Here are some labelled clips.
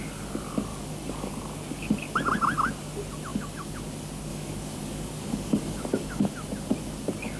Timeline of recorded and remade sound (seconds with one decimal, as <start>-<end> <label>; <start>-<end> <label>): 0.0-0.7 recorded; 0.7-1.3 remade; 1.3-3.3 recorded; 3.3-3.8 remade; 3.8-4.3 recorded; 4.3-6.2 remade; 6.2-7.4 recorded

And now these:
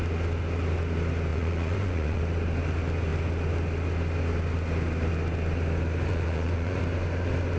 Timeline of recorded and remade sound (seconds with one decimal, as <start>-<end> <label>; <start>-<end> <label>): 0.0-1.3 recorded; 1.3-2.2 remade; 2.2-6.1 recorded; 6.1-6.8 remade; 6.8-7.6 recorded

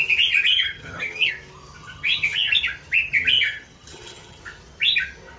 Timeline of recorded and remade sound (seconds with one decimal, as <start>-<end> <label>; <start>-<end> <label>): 0.0-0.5 recorded; 0.5-1.3 remade; 1.3-1.8 recorded; 1.8-2.5 remade; 2.5-3.3 recorded; 3.3-4.4 remade; 4.4-5.4 recorded